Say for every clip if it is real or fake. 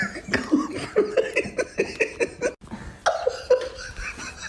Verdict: real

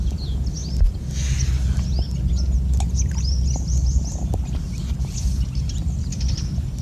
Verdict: real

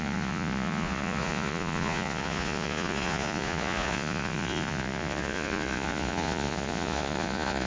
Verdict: fake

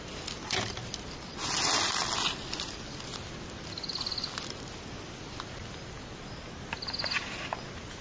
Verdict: real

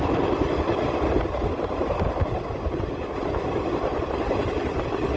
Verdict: real